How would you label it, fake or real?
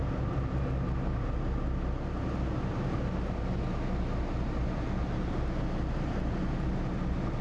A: real